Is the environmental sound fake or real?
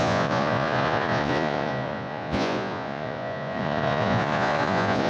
fake